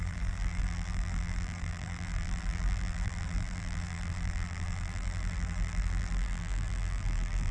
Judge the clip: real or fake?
fake